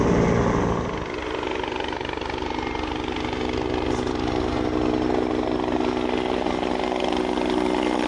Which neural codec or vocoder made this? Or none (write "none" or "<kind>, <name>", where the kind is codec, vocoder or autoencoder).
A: none